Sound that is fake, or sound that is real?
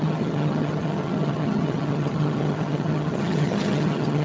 fake